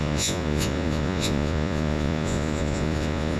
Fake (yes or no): yes